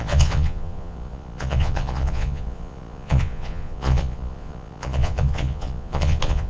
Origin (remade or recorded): remade